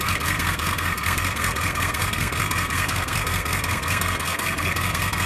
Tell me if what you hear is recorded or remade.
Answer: remade